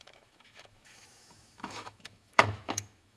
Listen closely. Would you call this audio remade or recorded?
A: remade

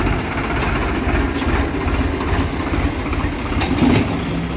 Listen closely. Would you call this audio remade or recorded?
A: recorded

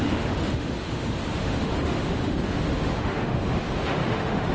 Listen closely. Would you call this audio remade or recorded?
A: remade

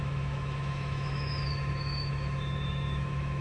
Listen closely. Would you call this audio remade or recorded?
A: remade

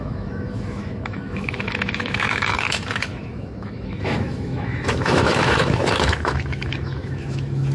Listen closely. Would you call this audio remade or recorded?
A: remade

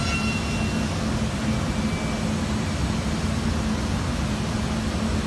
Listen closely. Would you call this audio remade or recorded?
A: recorded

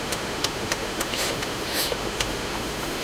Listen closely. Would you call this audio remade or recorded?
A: remade